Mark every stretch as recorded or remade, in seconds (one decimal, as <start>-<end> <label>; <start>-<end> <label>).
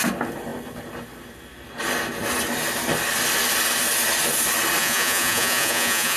0.0-4.8 recorded; 4.8-6.2 remade